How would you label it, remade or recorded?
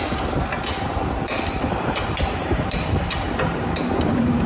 remade